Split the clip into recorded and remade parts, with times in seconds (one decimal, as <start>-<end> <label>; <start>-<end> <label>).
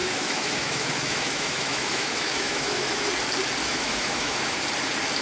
0.0-3.1 remade; 3.1-3.6 recorded; 3.6-4.6 remade; 4.6-5.2 recorded